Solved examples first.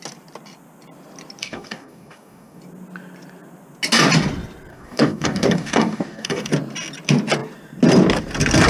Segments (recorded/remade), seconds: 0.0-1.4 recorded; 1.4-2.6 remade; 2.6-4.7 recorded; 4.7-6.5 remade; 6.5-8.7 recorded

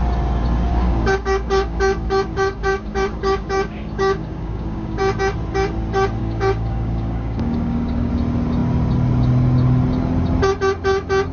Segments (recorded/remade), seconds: 0.0-0.7 recorded; 0.7-5.0 remade; 5.0-6.2 recorded; 6.2-8.1 remade; 8.1-11.3 recorded